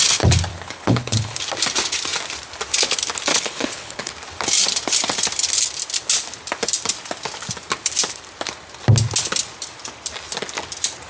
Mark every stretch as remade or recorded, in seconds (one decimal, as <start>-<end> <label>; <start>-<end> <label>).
0.0-0.5 recorded; 0.5-1.4 remade; 1.4-3.3 recorded; 3.3-4.1 remade; 4.1-11.1 recorded